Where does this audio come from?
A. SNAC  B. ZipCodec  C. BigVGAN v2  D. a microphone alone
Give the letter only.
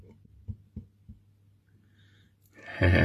D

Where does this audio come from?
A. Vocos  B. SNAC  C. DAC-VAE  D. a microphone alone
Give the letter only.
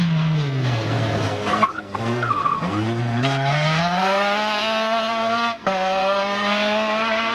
B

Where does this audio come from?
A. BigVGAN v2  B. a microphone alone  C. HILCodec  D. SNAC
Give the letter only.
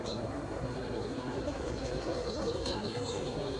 D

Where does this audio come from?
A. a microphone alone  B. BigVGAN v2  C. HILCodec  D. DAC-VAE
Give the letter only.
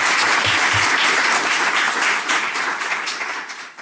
B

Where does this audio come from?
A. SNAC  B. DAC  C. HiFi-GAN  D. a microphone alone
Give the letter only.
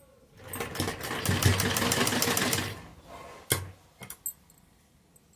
D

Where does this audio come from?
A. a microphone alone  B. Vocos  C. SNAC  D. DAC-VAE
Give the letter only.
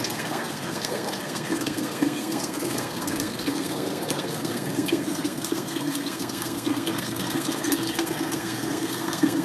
C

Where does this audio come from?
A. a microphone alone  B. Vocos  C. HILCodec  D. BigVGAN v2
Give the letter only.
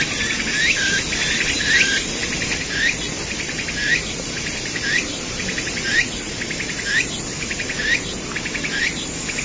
A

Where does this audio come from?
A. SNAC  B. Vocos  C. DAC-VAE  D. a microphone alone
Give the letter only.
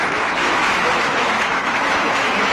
C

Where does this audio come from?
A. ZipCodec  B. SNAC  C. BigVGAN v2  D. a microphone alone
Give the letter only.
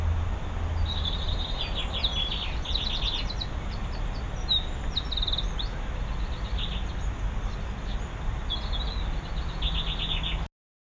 D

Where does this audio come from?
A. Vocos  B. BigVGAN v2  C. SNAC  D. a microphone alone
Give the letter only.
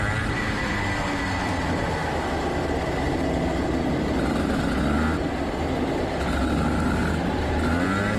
D